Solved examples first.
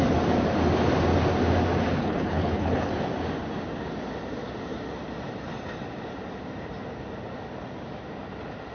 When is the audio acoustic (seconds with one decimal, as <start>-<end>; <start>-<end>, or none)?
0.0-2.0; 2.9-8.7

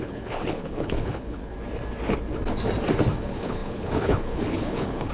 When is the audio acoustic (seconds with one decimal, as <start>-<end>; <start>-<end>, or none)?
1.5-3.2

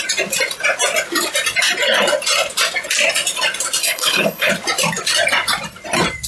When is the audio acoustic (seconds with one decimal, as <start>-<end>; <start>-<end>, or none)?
0.0-3.8; 4.5-6.3

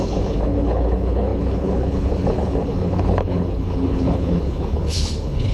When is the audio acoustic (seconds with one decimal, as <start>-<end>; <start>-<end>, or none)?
none